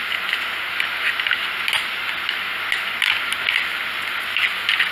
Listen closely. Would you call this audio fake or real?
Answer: real